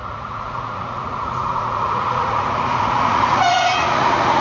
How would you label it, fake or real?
fake